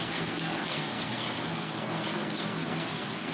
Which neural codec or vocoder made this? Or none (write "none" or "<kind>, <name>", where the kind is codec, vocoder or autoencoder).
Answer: codec, SNAC